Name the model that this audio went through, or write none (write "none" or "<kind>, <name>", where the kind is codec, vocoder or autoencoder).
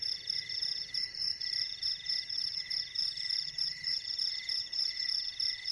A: vocoder, BigVGAN v2